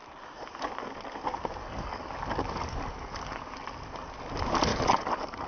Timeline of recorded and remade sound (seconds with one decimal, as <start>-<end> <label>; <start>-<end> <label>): 0.0-1.6 recorded; 1.6-3.6 remade; 3.6-4.7 recorded; 4.7-5.5 remade